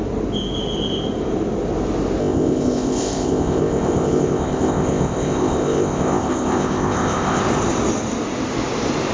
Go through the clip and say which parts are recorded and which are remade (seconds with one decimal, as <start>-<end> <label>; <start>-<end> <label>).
0.0-2.2 recorded; 2.2-7.4 remade; 7.4-9.1 recorded